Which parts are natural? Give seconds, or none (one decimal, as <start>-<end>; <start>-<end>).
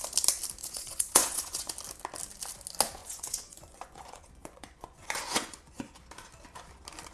0.0-0.6; 1.7-3.0; 6.0-7.1